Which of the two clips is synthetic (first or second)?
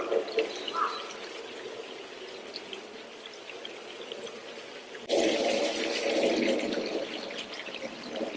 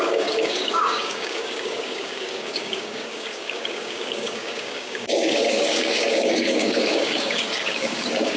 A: second